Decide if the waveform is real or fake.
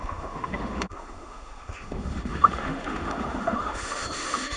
fake